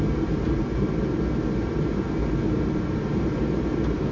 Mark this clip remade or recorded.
remade